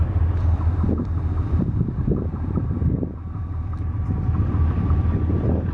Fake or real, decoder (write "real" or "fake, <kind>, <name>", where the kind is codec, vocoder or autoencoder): fake, vocoder, BigVGAN v2